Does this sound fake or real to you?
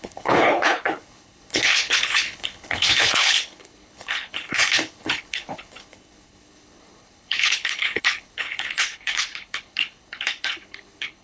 fake